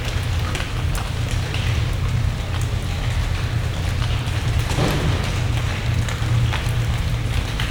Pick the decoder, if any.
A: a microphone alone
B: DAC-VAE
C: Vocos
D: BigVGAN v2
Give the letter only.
A